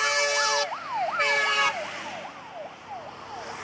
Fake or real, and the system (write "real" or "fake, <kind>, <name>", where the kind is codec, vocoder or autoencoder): real